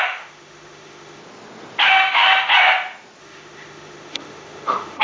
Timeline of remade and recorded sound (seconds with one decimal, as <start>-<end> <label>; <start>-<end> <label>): 0.0-1.2 remade; 1.2-1.8 recorded; 1.8-2.5 remade; 2.5-3.2 recorded; 3.2-5.0 remade